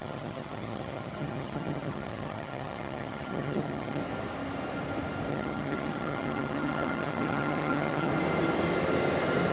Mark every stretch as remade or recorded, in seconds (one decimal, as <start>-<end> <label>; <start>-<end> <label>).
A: 0.0-4.0 remade; 4.0-5.3 recorded; 5.3-8.1 remade; 8.1-9.5 recorded